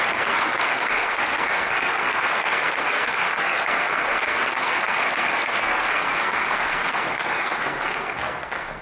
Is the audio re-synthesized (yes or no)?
yes